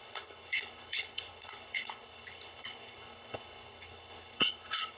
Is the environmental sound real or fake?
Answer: fake